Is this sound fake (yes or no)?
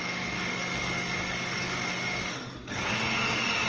yes